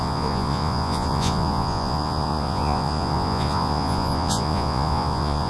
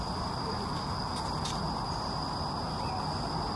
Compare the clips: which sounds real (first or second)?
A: second